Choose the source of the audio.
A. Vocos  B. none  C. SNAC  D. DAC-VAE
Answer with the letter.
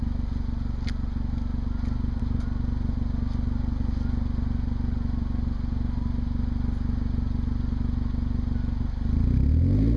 B